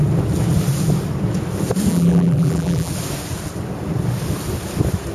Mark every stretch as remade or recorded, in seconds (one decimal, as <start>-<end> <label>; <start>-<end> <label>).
0.0-1.9 recorded; 1.9-2.9 remade; 2.9-5.1 recorded